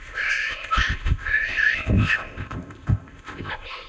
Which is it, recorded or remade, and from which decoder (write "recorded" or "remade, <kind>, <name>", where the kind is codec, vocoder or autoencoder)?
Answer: remade, codec, ZipCodec